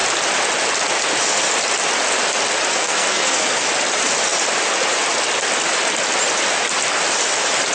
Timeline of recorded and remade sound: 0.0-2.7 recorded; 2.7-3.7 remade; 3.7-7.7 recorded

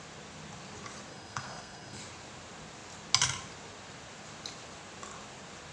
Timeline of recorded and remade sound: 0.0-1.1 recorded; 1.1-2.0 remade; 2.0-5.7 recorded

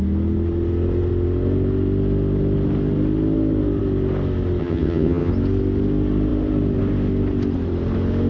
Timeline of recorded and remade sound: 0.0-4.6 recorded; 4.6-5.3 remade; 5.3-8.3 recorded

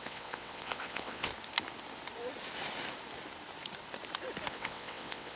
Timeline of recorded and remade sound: 0.0-1.3 remade; 1.3-4.5 recorded; 4.5-5.4 remade